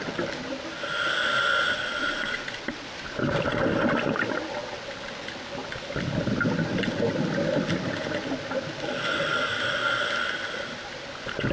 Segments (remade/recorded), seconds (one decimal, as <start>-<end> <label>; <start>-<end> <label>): 0.0-2.0 recorded; 2.0-2.6 remade; 2.6-11.5 recorded